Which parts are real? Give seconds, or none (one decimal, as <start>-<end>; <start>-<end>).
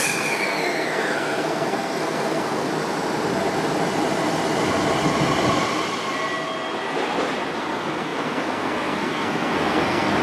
2.7-7.6